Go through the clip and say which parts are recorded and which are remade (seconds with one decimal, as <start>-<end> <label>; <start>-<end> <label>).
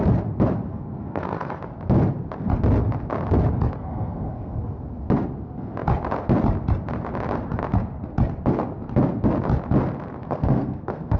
0.0-0.7 recorded; 0.7-1.6 remade; 1.6-3.8 recorded; 3.8-4.6 remade; 4.6-10.2 recorded; 10.2-11.2 remade